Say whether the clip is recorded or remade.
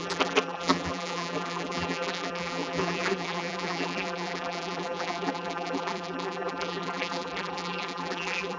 remade